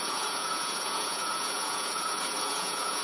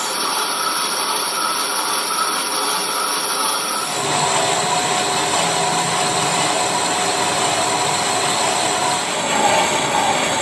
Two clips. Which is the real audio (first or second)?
second